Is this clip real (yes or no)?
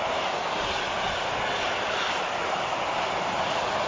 yes